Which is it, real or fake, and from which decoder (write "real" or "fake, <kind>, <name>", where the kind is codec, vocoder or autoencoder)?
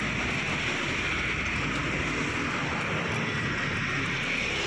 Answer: real